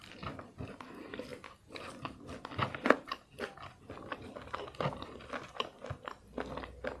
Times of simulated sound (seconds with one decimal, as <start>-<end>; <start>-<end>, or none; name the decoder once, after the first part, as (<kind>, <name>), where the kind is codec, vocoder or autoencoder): none